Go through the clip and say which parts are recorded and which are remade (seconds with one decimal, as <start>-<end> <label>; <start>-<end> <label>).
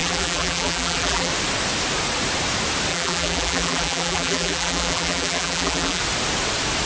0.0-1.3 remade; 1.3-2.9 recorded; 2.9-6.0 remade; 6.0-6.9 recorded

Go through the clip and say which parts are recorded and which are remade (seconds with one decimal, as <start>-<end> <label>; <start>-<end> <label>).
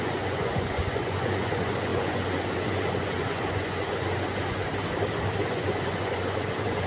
0.0-4.7 remade; 4.7-5.5 recorded; 5.5-6.9 remade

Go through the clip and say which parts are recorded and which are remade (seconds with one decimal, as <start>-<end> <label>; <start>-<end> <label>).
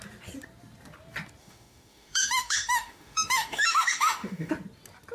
0.0-1.4 recorded; 1.4-4.5 remade; 4.5-5.1 recorded